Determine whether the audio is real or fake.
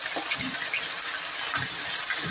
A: real